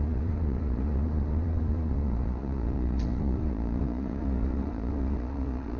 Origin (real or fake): fake